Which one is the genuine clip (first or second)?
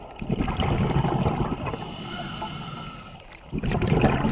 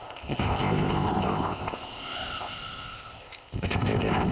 first